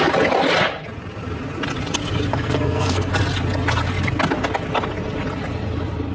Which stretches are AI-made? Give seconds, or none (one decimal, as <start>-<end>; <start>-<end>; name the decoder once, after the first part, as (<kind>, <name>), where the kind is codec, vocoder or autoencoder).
2.3-3.1 (codec, SNAC)